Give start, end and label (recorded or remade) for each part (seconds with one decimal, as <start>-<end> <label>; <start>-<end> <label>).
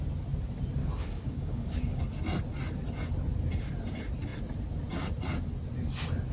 0.0-0.8 recorded; 0.8-2.0 remade; 2.0-6.3 recorded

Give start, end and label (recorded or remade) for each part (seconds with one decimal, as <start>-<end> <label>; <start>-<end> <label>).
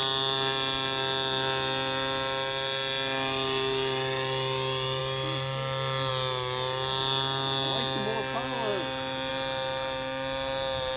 0.0-11.0 recorded